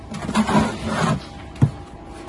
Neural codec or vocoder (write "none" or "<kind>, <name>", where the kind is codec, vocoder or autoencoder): none